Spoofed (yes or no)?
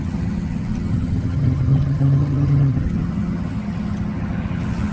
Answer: yes